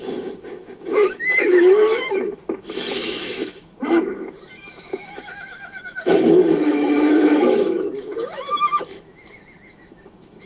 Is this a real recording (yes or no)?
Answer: no